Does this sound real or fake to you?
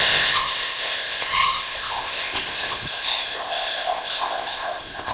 fake